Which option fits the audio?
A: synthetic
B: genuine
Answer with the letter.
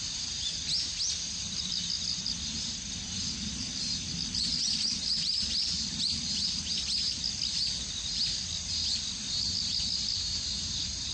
A